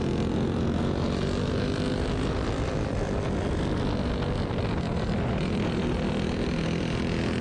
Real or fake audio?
real